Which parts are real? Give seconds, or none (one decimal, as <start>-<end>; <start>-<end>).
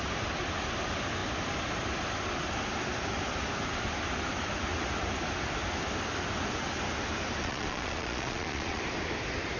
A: 0.0-7.4; 8.8-9.6